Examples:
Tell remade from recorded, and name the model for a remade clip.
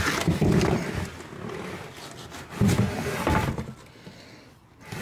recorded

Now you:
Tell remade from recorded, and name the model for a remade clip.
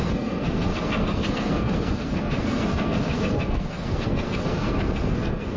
remade, codec, SNAC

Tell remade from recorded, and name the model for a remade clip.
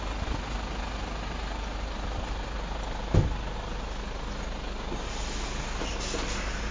recorded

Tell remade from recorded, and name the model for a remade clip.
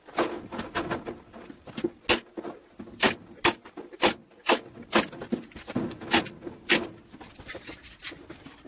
recorded